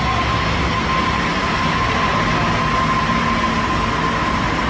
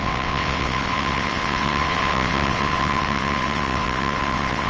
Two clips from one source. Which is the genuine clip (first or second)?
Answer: first